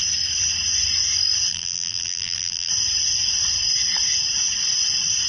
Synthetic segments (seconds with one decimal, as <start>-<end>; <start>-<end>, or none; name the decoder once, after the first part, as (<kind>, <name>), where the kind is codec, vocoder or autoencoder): 1.5-2.7 (vocoder, BigVGAN v2)